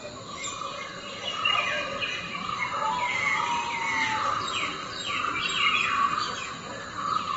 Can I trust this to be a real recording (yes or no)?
no